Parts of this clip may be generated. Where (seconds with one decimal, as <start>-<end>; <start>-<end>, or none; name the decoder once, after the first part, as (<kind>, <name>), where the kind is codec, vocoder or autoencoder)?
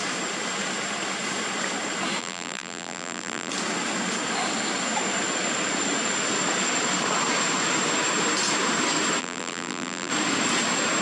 2.2-3.5 (vocoder, BigVGAN v2); 9.2-10.1